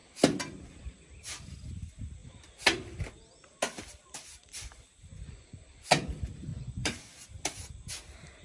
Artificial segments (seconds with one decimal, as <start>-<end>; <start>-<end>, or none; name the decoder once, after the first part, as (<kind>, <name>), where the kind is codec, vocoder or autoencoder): 5.1-5.7 (vocoder, Vocos); 6.5-7.0